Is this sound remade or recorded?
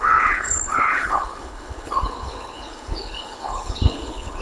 remade